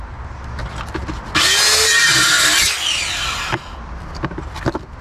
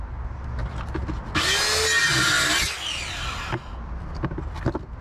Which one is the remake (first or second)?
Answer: first